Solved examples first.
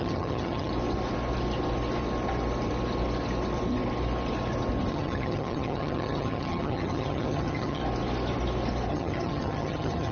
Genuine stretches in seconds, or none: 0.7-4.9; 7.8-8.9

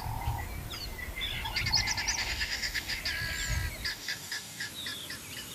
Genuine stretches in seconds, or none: 0.0-2.2; 3.0-3.9; 4.7-5.5

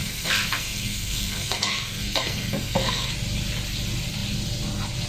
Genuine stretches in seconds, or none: 3.1-5.1